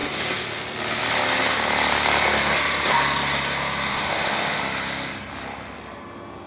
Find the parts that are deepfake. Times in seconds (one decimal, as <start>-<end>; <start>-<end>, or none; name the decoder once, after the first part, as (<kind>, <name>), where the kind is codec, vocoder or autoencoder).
3.9-4.6 (autoencoder, DAC-VAE)